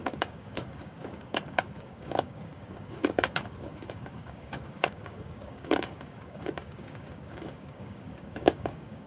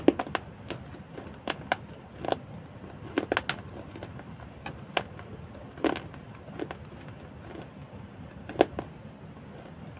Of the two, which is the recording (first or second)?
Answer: second